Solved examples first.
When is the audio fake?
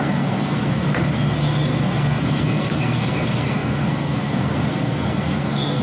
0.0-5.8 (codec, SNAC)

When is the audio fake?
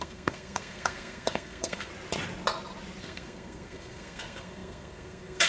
0.0-1.9 (codec, SNAC); 3.0-5.5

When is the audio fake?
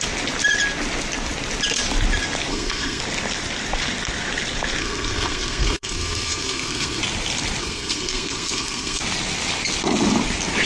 2.5-3.0 (codec, SNAC); 4.8-7.0; 7.6-9.0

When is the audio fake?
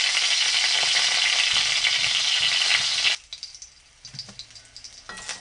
none